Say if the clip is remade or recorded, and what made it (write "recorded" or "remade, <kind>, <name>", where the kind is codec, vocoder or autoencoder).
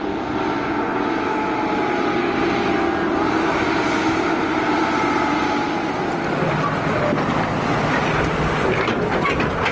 recorded